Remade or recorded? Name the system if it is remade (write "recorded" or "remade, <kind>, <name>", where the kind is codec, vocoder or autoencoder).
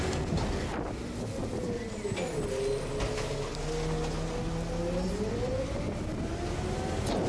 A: recorded